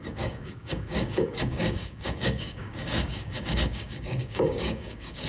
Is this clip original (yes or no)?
no